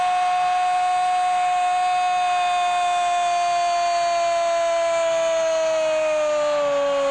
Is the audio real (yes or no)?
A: yes